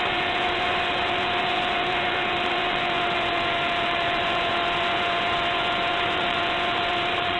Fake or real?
fake